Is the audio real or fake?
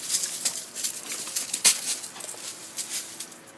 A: real